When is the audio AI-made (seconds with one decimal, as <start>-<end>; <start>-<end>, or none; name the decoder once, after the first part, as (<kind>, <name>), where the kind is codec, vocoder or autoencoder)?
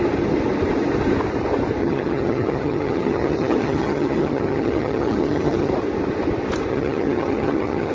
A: 1.8-5.7 (vocoder, HiFi-GAN); 6.7-7.9